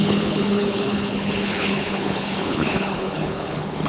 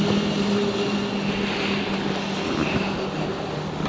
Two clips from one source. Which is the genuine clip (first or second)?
second